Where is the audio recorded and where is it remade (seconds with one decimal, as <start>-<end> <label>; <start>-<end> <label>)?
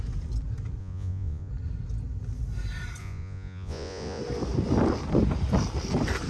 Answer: 0.0-0.8 recorded; 0.8-1.5 remade; 1.5-3.0 recorded; 3.0-4.2 remade; 4.2-6.3 recorded